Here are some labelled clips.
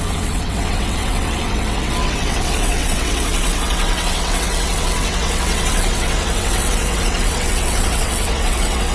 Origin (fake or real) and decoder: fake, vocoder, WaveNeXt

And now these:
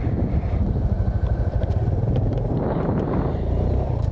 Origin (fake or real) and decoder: fake, vocoder, BigVGAN v2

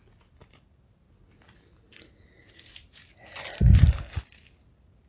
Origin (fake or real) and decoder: real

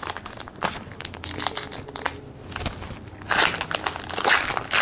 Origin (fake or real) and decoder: real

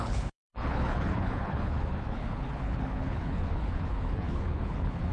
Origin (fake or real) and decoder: fake, codec, HILCodec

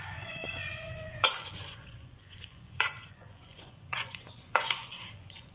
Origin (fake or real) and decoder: fake, vocoder, Vocos